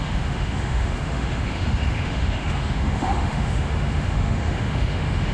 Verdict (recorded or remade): remade